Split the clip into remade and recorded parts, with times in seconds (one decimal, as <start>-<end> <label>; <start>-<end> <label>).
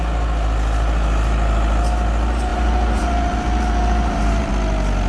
0.0-2.5 recorded; 2.5-4.5 remade; 4.5-5.1 recorded